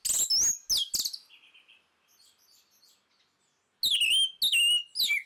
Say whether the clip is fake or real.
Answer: real